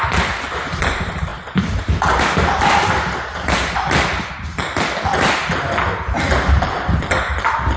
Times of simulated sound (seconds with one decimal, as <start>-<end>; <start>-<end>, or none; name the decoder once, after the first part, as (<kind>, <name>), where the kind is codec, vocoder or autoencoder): none